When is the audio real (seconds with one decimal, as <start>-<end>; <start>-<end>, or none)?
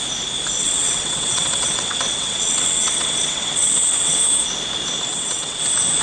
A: 0.0-0.6; 4.2-5.1; 5.6-6.0